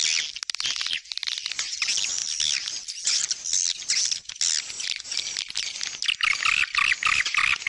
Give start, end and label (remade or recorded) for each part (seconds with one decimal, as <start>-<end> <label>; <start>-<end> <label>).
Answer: 0.0-7.7 recorded